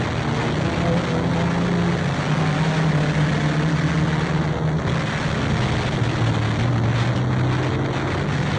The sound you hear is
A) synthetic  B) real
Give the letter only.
B